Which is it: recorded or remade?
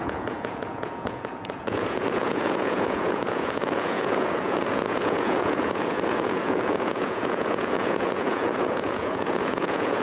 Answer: remade